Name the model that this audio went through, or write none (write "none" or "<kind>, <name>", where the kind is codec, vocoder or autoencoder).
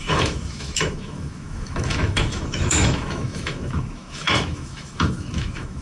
autoencoder, DAC-VAE